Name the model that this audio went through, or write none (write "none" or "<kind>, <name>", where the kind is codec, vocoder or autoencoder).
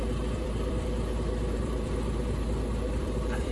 vocoder, BigVGAN v2